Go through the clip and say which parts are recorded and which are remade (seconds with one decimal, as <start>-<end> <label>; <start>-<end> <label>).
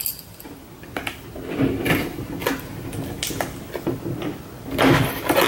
0.0-5.5 recorded